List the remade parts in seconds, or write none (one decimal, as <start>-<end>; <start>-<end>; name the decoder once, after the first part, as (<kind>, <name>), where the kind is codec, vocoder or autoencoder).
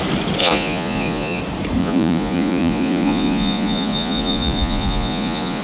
0.4-1.4 (vocoder, Vocos); 1.8-5.6